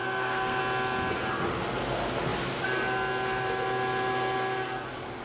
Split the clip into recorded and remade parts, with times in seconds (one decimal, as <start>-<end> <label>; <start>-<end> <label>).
0.0-0.6 remade; 0.6-5.2 recorded